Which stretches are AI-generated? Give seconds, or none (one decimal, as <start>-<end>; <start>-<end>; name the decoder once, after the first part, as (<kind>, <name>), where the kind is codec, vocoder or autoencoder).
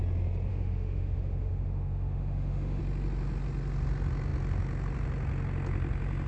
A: 0.5-2.8 (autoencoder, DAC-VAE)